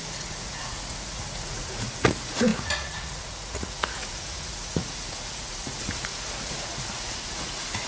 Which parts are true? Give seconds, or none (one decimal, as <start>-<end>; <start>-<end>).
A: none

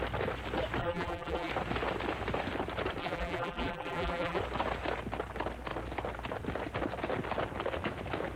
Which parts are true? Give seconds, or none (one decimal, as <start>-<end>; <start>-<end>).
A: 0.0-0.8; 1.5-3.0; 4.4-8.4